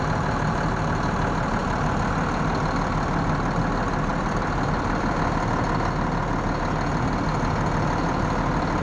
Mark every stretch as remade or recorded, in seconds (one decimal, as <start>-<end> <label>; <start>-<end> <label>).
0.0-4.1 recorded; 4.1-5.3 remade; 5.3-8.8 recorded